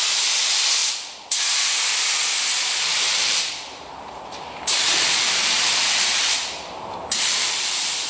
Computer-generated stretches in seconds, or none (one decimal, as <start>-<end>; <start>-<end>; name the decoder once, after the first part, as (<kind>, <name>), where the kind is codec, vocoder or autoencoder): 0.8-1.4 (vocoder, BigVGAN v2); 2.9-8.1